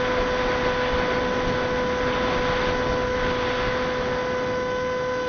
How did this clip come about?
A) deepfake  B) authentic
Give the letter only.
B